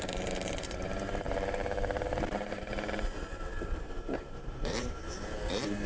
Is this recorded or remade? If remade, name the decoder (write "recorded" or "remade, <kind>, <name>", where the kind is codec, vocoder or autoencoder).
remade, vocoder, BigVGAN v2